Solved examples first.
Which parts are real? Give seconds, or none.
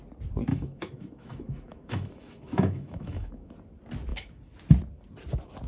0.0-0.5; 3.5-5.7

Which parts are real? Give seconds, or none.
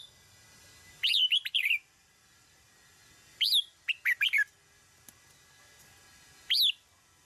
0.0-7.3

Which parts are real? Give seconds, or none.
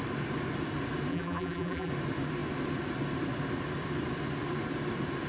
0.0-1.1; 1.9-5.3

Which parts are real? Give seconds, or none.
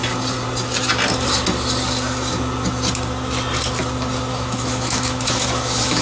0.0-4.3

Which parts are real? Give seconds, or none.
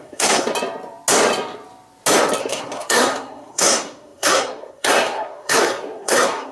0.5-2.4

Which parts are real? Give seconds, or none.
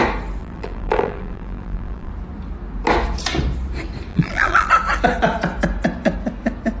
0.0-0.4; 2.1-4.1; 4.7-6.8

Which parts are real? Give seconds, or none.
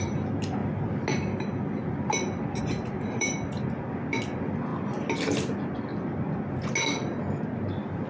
0.6-2.6; 4.7-7.6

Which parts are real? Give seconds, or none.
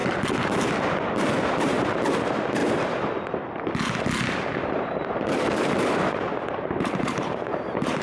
0.0-1.5; 2.6-4.5